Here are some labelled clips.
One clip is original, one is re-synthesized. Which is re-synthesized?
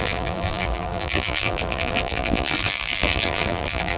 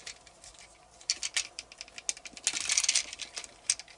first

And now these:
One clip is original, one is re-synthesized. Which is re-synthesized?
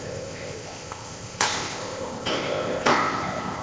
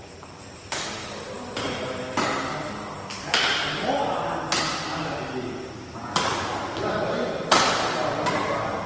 first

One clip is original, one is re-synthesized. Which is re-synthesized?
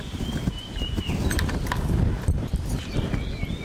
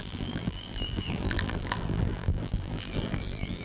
second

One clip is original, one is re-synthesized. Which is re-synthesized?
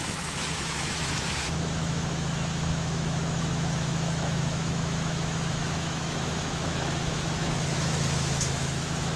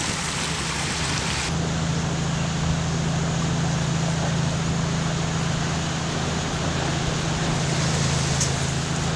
first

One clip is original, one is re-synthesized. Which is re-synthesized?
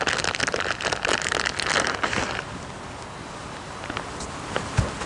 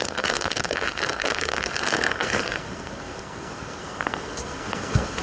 second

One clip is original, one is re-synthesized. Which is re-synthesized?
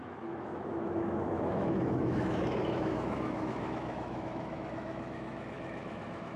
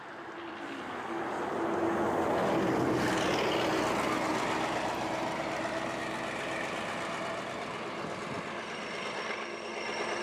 first